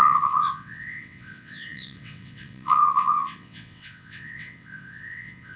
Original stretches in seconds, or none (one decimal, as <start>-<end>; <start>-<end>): none